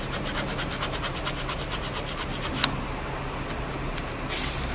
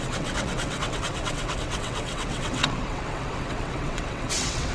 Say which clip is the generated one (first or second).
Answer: second